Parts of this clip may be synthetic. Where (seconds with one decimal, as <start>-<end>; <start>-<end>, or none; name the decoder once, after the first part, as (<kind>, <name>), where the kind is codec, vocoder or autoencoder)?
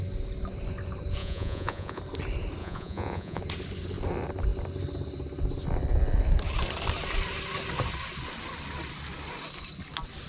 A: 1.2-2.0 (vocoder, Vocos); 2.6-3.4